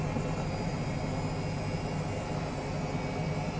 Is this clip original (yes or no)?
yes